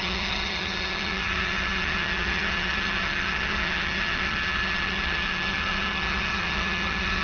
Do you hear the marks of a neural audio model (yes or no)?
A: yes